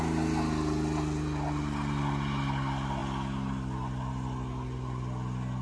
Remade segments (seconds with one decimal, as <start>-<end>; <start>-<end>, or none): none